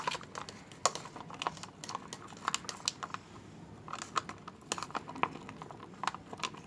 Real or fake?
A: real